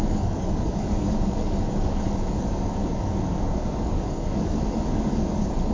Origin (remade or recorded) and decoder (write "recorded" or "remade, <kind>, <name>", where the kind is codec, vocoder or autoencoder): remade, codec, DAC